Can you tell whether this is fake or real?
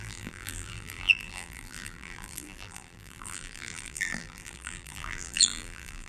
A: fake